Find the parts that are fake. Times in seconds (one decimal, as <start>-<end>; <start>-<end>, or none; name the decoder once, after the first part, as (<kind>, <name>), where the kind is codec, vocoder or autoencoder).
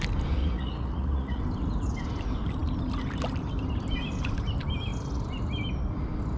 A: 0.4-1.4 (vocoder, Vocos)